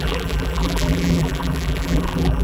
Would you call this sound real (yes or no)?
no